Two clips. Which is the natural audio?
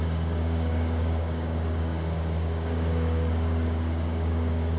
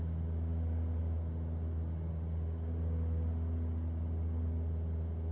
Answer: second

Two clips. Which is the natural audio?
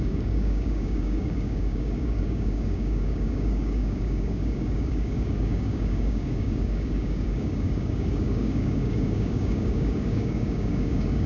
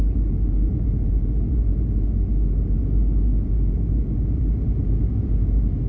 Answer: second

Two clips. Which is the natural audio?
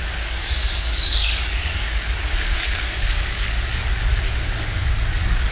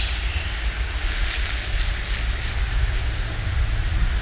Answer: second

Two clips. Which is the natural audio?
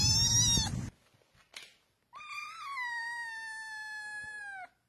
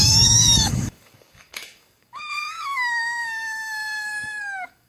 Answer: first